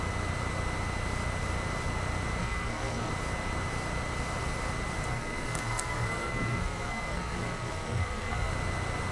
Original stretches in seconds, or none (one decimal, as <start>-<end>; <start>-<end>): 0.0-2.4; 3.1-5.1; 8.5-9.1